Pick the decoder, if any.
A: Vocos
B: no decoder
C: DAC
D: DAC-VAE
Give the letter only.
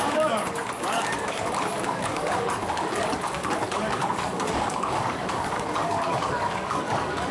C